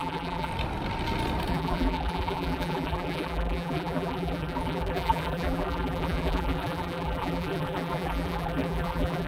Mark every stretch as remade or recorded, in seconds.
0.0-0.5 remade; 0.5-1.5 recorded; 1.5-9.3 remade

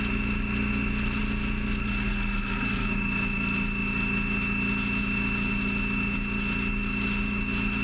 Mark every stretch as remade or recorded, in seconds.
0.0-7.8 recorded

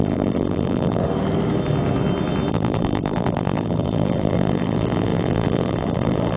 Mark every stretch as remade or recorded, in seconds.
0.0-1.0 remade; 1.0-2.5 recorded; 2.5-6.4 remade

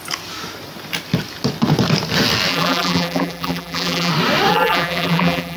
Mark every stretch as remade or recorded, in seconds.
0.0-2.5 recorded; 2.5-4.1 remade; 4.1-4.5 recorded; 4.5-5.6 remade

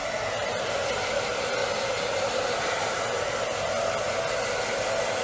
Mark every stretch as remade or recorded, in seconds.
0.0-0.4 recorded; 0.4-1.1 remade; 1.1-1.6 recorded; 1.6-2.2 remade; 2.2-5.2 recorded

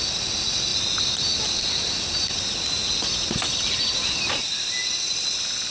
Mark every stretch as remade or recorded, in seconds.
0.0-5.7 recorded

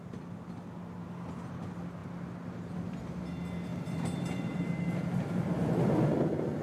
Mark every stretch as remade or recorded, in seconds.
0.0-3.7 recorded; 3.7-5.7 remade; 5.7-6.6 recorded